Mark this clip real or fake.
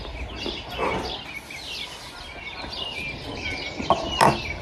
real